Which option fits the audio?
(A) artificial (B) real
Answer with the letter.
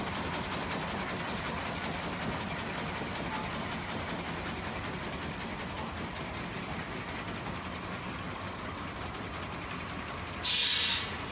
B